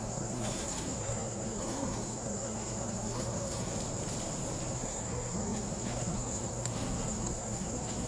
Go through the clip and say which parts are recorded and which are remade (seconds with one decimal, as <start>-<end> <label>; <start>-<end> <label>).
0.0-3.7 remade; 3.7-4.7 recorded; 4.7-8.1 remade